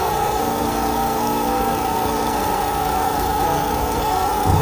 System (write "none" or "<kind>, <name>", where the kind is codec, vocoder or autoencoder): codec, SNAC